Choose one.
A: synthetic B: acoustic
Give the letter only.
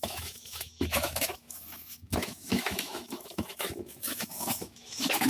A